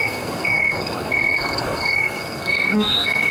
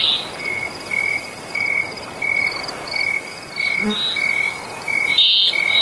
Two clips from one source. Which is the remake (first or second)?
first